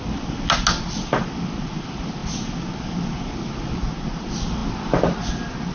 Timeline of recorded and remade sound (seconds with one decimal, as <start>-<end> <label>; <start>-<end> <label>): 0.0-5.7 recorded